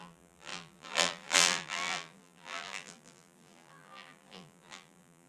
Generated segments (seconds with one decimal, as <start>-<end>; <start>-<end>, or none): 0.0-5.3